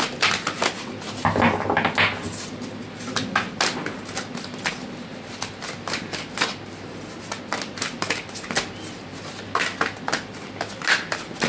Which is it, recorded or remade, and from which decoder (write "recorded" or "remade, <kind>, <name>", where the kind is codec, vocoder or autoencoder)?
recorded